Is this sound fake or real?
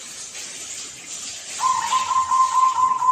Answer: real